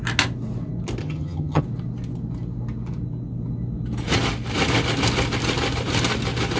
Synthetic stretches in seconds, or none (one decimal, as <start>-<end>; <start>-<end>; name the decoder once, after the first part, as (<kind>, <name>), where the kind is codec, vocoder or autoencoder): 1.0-1.6 (vocoder, HiFi-GAN)